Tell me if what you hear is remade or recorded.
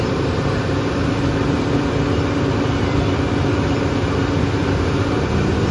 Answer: recorded